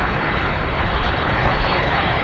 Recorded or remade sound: remade